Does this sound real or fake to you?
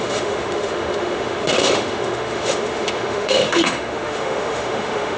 fake